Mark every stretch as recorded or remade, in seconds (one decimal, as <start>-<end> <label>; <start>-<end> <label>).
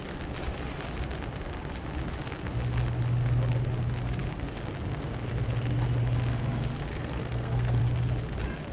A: 0.0-6.9 recorded; 6.9-7.8 remade; 7.8-8.7 recorded